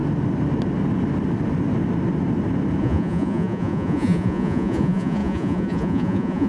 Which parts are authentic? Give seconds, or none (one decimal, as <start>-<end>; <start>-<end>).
0.0-2.8